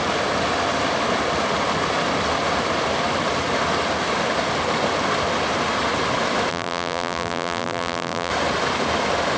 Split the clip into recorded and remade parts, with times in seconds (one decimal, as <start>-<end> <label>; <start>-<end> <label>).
0.0-6.5 recorded; 6.5-8.3 remade; 8.3-9.4 recorded